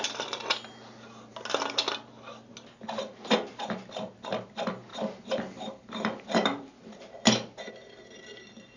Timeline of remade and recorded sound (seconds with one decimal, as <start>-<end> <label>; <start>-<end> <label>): 0.0-4.9 recorded; 4.9-7.7 remade; 7.7-8.8 recorded